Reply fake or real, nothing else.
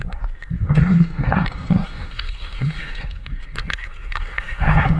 fake